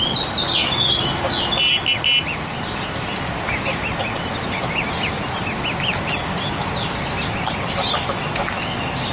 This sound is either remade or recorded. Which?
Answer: recorded